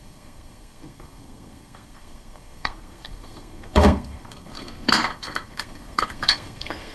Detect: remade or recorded remade